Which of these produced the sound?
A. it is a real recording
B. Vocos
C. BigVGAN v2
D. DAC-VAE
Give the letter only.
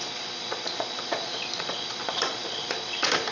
B